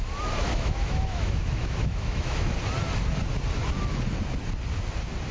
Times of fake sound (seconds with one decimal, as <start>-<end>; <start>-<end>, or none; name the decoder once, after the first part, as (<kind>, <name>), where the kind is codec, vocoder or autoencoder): 0.4-2.5 (autoencoder, DAC-VAE)